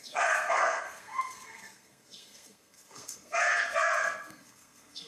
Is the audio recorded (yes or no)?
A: no